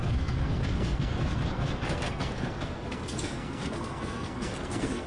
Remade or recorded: remade